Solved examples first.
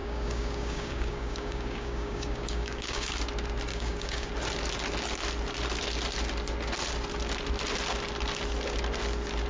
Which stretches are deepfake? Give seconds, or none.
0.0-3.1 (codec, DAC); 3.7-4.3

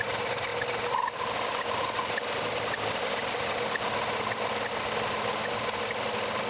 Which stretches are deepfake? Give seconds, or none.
none